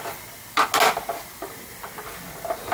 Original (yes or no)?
yes